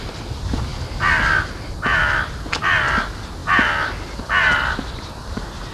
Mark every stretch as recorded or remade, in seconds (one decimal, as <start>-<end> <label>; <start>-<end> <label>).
0.0-5.7 recorded